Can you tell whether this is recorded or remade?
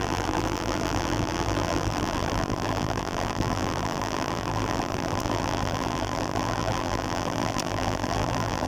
remade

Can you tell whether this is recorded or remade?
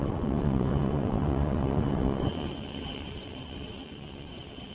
remade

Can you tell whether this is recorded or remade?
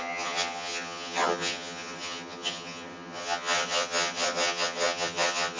remade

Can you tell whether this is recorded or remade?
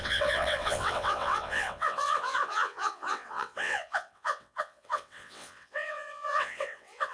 remade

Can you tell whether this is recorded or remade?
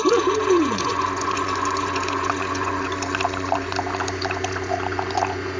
remade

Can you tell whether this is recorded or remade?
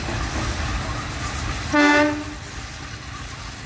recorded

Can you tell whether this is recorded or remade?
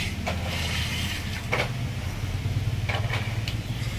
recorded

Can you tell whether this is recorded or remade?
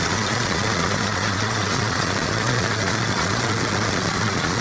remade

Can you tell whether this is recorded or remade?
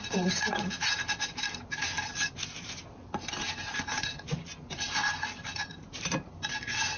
recorded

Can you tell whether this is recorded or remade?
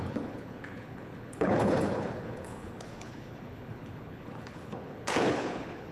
remade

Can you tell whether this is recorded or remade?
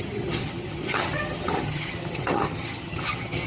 remade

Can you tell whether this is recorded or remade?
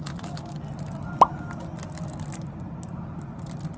recorded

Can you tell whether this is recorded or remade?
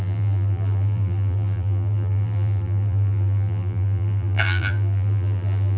remade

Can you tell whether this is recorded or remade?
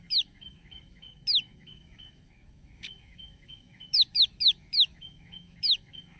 remade